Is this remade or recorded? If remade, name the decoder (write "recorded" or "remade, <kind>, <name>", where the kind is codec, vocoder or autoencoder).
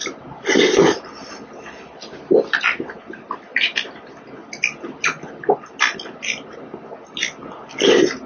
recorded